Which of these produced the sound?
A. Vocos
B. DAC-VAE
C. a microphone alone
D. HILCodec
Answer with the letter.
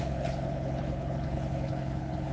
D